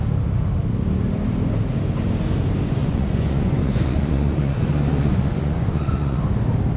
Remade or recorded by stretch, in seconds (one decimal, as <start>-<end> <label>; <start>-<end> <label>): 0.0-2.8 recorded; 2.8-6.2 remade; 6.2-6.8 recorded